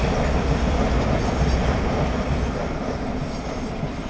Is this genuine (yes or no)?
yes